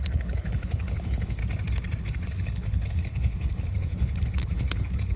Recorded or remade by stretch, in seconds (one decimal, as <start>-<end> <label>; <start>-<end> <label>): 0.0-1.4 remade; 1.4-2.0 recorded; 2.0-5.2 remade